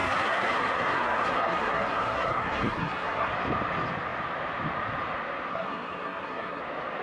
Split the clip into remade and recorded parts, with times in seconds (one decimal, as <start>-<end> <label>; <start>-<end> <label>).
0.0-3.3 remade; 3.3-5.5 recorded; 5.5-6.6 remade; 6.6-7.0 recorded